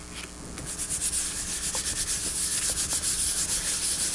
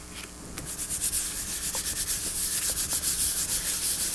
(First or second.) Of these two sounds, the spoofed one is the second